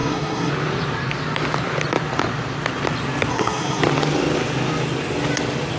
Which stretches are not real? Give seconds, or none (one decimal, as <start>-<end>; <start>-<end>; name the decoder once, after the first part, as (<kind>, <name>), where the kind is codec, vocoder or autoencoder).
0.0-0.5 (codec, SNAC); 3.3-3.8